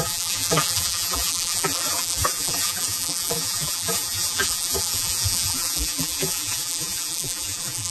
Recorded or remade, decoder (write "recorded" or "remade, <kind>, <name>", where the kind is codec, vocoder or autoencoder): remade, vocoder, BigVGAN v2